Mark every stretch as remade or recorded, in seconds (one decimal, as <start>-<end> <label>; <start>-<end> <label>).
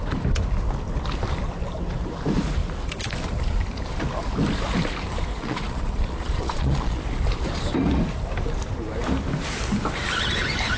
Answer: 0.0-5.3 recorded; 5.3-7.0 remade; 7.0-10.8 recorded